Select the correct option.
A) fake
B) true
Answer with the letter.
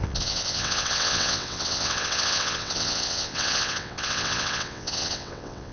A